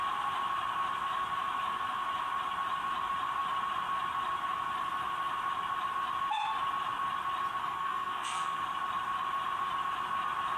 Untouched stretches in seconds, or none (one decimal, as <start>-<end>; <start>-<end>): 0.0-7.6; 8.6-10.6